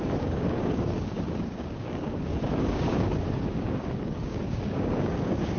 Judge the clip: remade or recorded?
remade